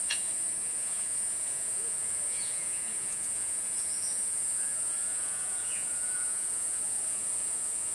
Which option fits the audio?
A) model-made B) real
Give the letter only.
A